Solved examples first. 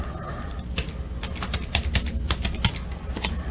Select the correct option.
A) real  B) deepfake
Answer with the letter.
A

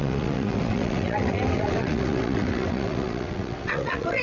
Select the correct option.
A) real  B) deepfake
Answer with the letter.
B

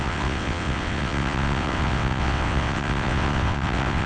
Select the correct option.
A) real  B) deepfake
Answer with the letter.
B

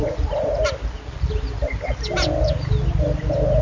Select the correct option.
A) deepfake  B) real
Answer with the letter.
B